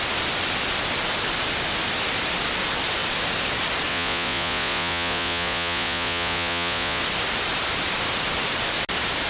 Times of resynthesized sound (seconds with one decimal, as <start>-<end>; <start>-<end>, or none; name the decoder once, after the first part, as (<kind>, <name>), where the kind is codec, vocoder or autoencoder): 3.9-7.0 (vocoder, Vocos)